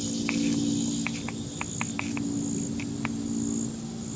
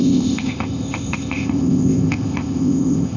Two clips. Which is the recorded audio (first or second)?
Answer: first